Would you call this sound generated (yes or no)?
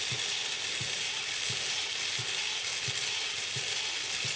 no